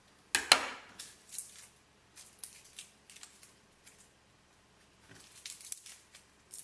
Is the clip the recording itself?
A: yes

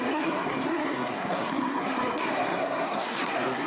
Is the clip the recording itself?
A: no